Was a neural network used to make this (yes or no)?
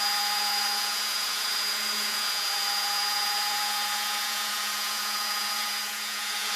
yes